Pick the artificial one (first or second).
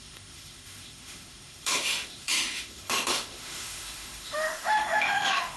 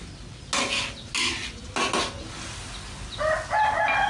first